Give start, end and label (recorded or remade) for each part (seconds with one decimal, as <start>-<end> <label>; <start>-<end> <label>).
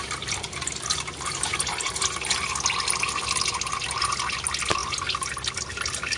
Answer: 0.0-6.2 recorded